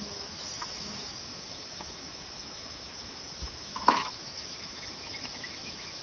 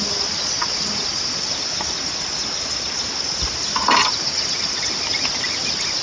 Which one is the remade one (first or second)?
first